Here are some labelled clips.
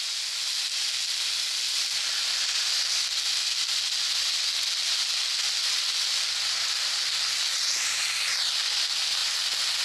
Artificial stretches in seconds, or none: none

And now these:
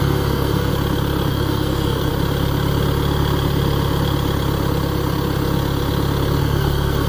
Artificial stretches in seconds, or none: 0.0-0.7 (codec, SNAC); 1.3-2.1; 6.4-7.1

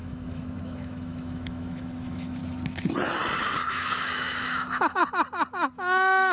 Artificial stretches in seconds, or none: 0.0-2.4 (autoencoder, DAC-VAE); 3.7-5.0; 5.7-6.3

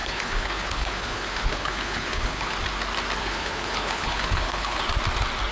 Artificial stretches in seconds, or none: 0.0-2.5 (codec, HILCodec); 3.2-4.8

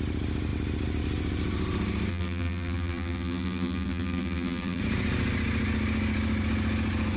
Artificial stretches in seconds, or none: 2.1-4.8 (vocoder, BigVGAN v2)

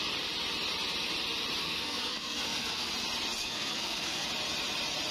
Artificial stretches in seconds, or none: 1.6-2.9 (codec, SNAC); 3.4-4.3

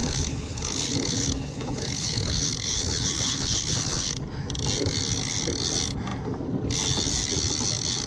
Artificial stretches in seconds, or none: 0.0-4.2 (codec, HILCodec)